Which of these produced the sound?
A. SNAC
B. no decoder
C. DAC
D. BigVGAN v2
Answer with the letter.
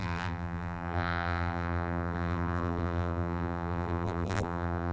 D